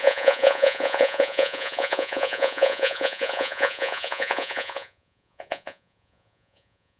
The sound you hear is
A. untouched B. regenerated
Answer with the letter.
B